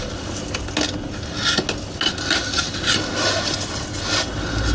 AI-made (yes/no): no